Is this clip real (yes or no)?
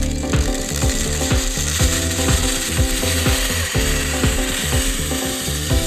no